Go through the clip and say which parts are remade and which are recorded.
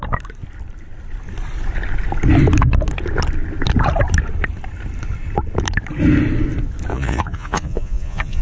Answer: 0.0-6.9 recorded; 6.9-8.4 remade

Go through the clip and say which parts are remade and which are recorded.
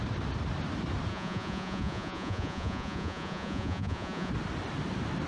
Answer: 0.0-1.1 recorded; 1.1-4.3 remade; 4.3-5.3 recorded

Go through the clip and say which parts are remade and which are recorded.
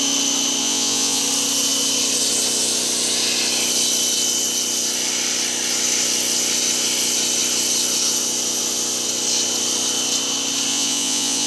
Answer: 0.0-0.6 recorded; 0.6-1.2 remade; 1.2-10.7 recorded; 10.7-11.5 remade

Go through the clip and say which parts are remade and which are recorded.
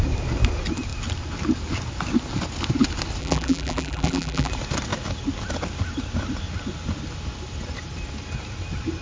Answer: 0.0-3.2 recorded; 3.2-4.5 remade; 4.5-9.0 recorded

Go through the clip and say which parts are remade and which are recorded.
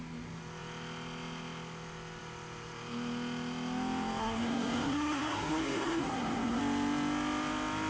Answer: 0.0-4.2 recorded; 4.2-6.6 remade; 6.6-7.9 recorded